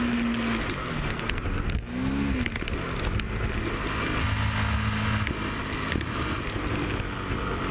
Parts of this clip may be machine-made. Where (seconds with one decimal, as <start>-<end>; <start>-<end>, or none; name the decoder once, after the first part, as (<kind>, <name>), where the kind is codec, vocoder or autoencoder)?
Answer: 0.8-1.4 (codec, SNAC)